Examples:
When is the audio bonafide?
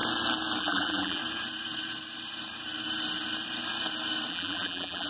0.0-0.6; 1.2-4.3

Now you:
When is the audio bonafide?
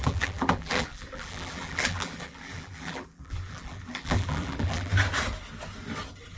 4.9-6.4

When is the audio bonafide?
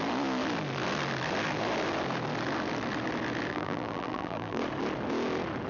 0.0-3.5; 4.6-5.7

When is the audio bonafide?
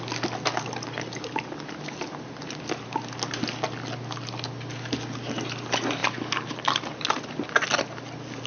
0.0-8.5